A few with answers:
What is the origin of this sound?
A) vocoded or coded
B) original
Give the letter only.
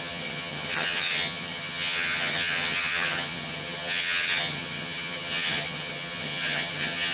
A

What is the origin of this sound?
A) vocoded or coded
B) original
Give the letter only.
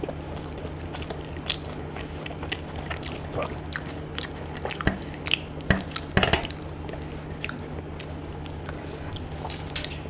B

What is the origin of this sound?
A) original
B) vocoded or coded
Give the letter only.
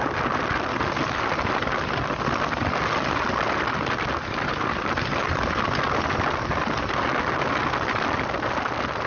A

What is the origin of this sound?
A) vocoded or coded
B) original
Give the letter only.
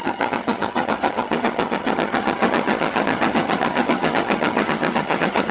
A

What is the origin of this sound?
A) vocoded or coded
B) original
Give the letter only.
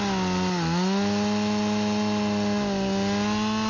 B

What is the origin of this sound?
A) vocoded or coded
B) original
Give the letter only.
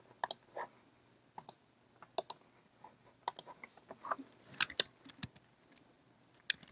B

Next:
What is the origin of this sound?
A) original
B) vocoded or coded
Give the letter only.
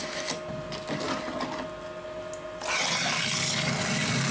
A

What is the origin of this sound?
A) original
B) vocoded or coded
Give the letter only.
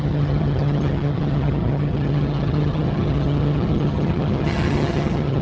B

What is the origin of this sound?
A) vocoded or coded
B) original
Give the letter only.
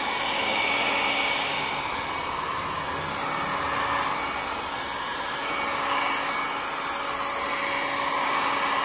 B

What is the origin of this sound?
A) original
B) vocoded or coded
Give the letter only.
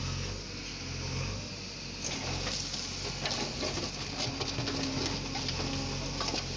A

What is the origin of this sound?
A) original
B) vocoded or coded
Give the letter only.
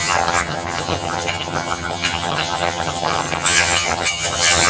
B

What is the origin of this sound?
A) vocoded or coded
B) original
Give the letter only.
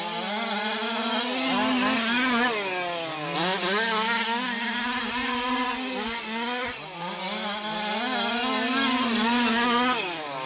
B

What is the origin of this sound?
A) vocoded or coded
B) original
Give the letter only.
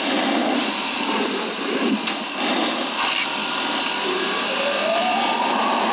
B